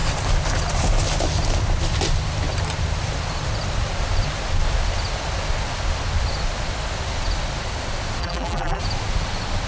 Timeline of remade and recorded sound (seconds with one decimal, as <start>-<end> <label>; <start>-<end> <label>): 0.0-8.2 recorded; 8.2-8.8 remade; 8.8-9.7 recorded